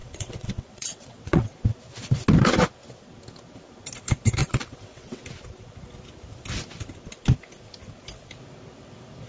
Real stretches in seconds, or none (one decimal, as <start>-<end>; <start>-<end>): 1.5-4.4; 5.2-9.3